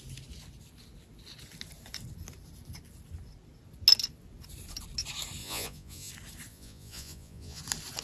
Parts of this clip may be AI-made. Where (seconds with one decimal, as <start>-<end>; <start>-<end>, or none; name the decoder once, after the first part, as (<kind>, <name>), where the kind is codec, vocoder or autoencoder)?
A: 5.4-6.1 (vocoder, Vocos); 6.5-7.6